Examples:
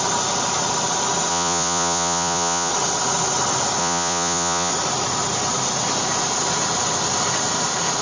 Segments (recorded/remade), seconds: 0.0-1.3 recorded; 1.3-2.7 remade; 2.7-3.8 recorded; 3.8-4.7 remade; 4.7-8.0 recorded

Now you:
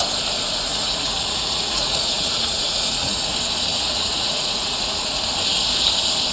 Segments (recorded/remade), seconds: 0.0-0.7 recorded; 0.7-3.3 remade; 3.3-3.7 recorded; 3.7-5.2 remade; 5.2-6.3 recorded

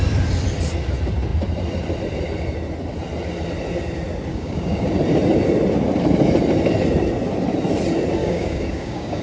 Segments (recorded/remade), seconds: 0.0-4.3 recorded; 4.3-4.9 remade; 4.9-8.2 recorded; 8.2-9.2 remade

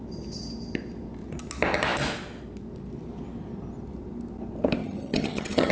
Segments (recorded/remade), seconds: 0.0-4.8 recorded; 4.8-5.7 remade

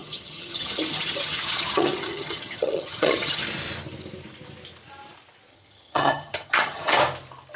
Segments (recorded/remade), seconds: 0.0-3.4 remade; 3.4-5.5 recorded; 5.5-6.9 remade; 6.9-7.6 recorded

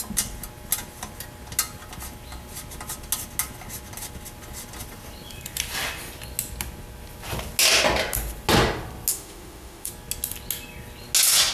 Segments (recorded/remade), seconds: 0.0-9.1 recorded; 9.1-9.9 remade; 9.9-11.5 recorded